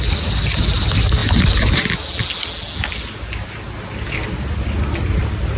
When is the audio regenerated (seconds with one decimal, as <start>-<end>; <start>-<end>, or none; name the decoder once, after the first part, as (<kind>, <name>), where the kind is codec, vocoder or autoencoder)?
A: none